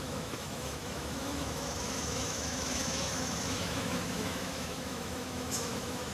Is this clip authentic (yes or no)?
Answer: no